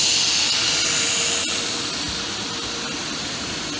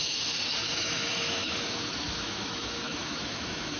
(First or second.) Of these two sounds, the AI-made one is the second